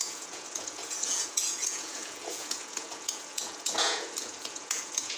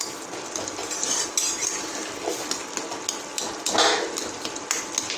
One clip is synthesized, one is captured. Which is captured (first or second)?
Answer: second